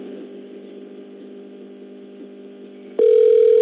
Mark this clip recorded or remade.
recorded